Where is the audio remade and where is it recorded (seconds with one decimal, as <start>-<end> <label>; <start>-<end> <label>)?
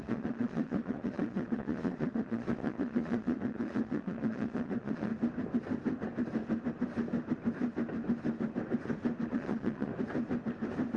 0.0-5.1 remade; 5.1-9.3 recorded; 9.3-9.9 remade; 9.9-11.0 recorded